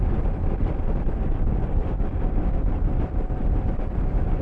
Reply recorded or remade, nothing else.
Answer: recorded